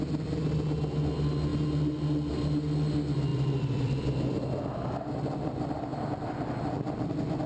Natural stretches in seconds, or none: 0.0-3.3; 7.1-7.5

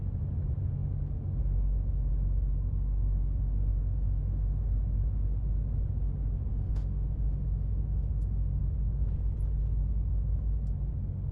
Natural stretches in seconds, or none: 0.0-3.7; 4.6-6.5; 8.6-11.3